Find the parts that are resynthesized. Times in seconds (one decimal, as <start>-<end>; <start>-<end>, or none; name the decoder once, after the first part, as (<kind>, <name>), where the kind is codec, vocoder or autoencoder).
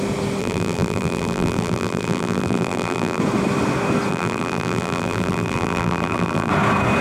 0.4-3.2 (vocoder, BigVGAN v2); 4.1-6.5